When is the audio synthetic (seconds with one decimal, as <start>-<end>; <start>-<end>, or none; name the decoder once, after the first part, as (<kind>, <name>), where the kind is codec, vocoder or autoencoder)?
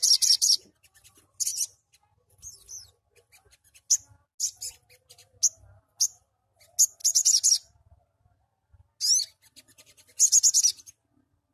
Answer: none